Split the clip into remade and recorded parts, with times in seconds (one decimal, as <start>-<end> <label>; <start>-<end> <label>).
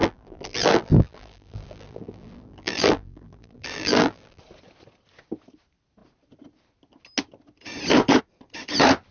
0.0-4.4 remade; 4.4-9.1 recorded